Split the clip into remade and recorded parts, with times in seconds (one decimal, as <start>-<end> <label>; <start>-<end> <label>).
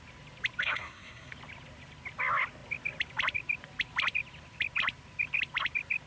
0.0-0.6 recorded; 0.6-1.3 remade; 1.3-6.1 recorded